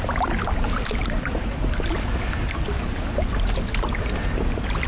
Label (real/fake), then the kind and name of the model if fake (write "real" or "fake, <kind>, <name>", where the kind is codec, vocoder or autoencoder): real